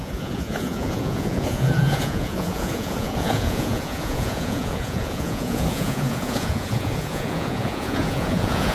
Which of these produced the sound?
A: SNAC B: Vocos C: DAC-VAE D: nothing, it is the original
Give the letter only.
B